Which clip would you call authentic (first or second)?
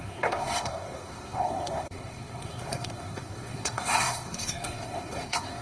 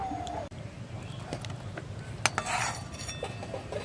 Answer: second